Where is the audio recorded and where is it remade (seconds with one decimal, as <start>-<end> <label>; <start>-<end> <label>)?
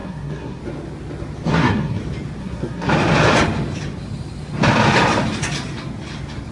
0.0-0.6 remade; 0.6-1.5 recorded; 1.5-2.0 remade; 2.0-2.4 recorded; 2.4-2.9 remade; 2.9-6.5 recorded